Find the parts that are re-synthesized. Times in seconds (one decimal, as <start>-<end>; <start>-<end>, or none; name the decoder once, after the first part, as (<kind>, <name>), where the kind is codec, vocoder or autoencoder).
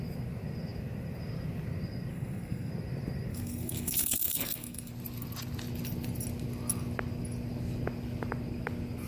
2.1-2.7 (codec, SNAC); 3.3-4.9